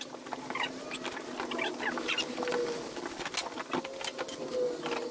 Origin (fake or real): real